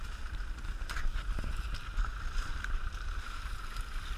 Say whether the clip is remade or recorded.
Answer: recorded